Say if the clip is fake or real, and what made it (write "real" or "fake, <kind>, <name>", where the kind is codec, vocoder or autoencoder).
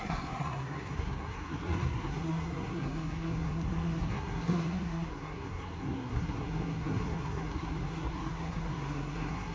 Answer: fake, codec, SNAC